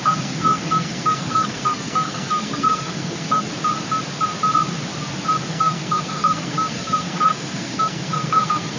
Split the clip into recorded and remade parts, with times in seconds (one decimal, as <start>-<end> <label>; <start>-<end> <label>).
0.0-3.5 remade; 3.5-5.5 recorded; 5.5-8.8 remade